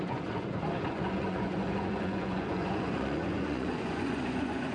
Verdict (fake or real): fake